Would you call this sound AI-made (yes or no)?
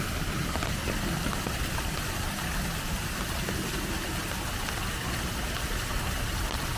yes